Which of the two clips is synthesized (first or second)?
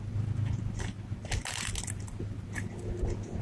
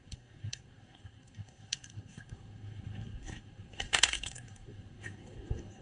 second